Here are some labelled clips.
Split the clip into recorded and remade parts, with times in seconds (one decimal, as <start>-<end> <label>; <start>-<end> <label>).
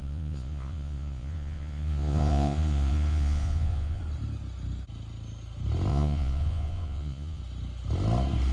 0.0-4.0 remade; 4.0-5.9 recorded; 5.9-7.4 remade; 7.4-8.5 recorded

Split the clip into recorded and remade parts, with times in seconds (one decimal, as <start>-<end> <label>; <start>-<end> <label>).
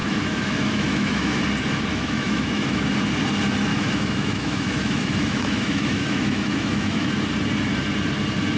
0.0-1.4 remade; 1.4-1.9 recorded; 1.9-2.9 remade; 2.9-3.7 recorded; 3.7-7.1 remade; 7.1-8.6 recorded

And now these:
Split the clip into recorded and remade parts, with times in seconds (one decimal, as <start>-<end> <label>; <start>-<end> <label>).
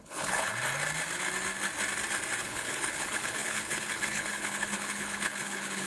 0.0-0.5 remade; 0.5-2.4 recorded; 2.4-5.9 remade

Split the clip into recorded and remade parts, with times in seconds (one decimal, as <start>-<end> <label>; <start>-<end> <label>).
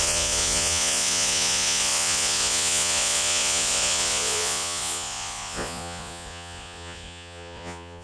0.0-8.0 remade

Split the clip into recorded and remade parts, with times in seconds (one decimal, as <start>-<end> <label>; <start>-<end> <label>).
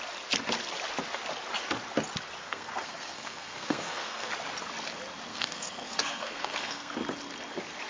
0.0-2.4 recorded; 2.4-4.3 remade; 4.3-5.3 recorded; 5.3-6.9 remade; 6.9-7.9 recorded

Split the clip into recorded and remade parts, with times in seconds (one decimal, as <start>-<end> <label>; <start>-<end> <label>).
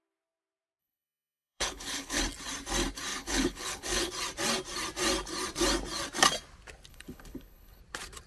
0.0-0.8 recorded; 0.8-2.2 remade; 2.2-3.1 recorded; 3.1-4.1 remade; 4.1-6.9 recorded; 6.9-7.8 remade; 7.8-8.3 recorded